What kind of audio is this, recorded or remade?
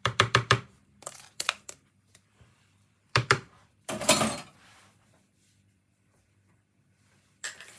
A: remade